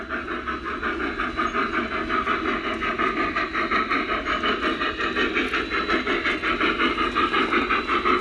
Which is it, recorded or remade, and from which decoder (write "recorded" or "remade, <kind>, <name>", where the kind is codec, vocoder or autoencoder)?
recorded